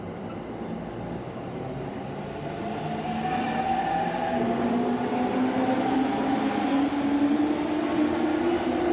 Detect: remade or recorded recorded